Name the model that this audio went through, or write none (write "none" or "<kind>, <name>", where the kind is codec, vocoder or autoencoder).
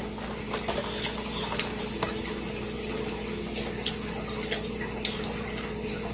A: none